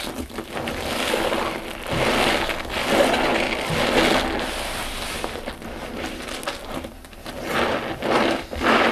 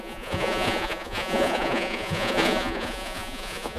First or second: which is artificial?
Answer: second